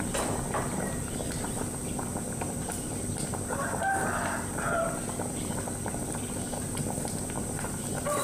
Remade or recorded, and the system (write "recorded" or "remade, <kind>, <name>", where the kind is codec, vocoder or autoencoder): remade, vocoder, BigVGAN v2